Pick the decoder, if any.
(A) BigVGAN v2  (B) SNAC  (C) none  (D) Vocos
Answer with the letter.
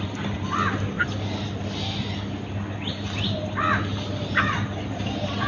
C